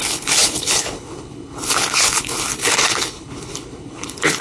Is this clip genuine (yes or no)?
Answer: no